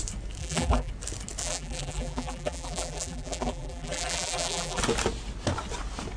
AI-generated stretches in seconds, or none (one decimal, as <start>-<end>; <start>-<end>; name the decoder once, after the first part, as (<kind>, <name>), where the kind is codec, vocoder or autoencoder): 0.4-0.9 (vocoder, BigVGAN v2); 1.4-4.8

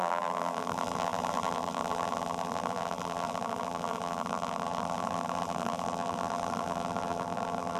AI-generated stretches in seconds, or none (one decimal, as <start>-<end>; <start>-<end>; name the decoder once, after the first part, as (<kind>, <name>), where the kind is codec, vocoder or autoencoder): 0.0-7.8 (vocoder, BigVGAN v2)

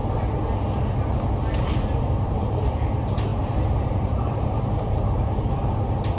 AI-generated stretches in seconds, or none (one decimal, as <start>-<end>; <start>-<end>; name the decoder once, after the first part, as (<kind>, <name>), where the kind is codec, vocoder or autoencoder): 2.0-6.2 (vocoder, BigVGAN v2)

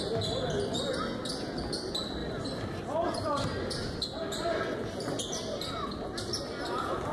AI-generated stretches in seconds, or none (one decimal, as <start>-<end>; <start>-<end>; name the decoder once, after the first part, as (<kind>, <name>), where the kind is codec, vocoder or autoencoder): 2.2-5.7 (vocoder, BigVGAN v2)